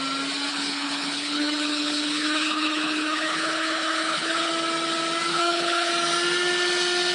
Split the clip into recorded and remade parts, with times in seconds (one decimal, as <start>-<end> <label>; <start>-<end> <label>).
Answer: 0.0-0.5 recorded; 0.5-4.5 remade; 4.5-5.3 recorded; 5.3-5.9 remade; 5.9-7.1 recorded